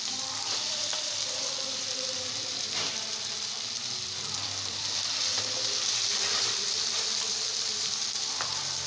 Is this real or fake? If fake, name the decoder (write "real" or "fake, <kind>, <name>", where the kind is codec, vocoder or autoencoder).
fake, vocoder, BigVGAN v2